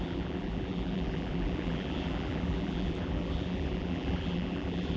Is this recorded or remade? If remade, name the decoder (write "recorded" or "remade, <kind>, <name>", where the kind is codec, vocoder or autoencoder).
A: remade, vocoder, BigVGAN v2